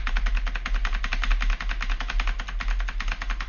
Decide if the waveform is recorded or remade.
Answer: recorded